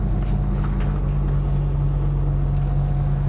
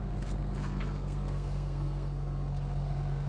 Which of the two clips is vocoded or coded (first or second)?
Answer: second